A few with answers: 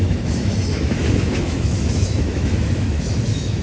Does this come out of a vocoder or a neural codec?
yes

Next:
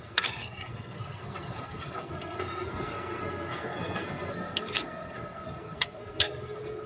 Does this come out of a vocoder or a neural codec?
yes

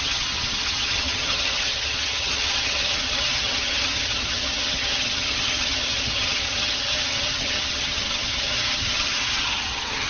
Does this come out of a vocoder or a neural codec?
yes